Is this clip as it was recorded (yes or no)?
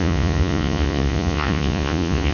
no